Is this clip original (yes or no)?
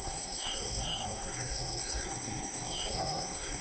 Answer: no